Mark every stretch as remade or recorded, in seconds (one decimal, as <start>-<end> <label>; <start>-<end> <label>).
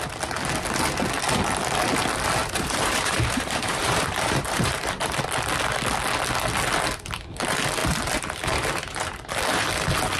0.0-2.4 recorded; 2.4-5.2 remade; 5.2-7.8 recorded; 7.8-9.7 remade; 9.7-10.2 recorded